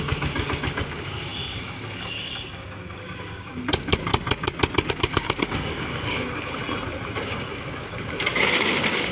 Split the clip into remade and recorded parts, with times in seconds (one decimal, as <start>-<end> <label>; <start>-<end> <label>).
0.0-4.1 remade; 4.1-4.9 recorded; 4.9-6.6 remade; 6.6-7.2 recorded; 7.2-9.1 remade